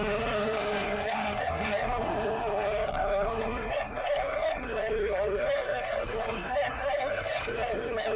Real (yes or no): no